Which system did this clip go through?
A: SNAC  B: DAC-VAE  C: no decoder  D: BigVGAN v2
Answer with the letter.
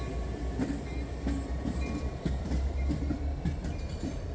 D